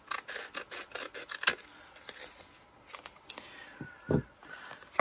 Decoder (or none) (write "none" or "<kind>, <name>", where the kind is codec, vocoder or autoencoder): none